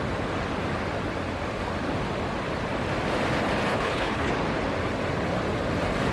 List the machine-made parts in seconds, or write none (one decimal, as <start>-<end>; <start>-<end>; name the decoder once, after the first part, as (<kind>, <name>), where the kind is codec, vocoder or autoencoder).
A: 3.7-4.3 (codec, HILCodec)